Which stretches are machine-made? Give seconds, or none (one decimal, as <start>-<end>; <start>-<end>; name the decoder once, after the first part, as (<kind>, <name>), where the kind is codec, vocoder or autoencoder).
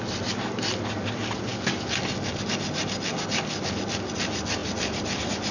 0.0-1.5 (vocoder, BigVGAN v2); 4.1-5.5